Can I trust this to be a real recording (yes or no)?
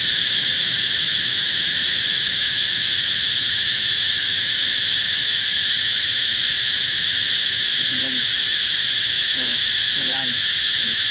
no